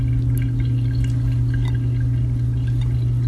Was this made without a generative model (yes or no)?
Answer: yes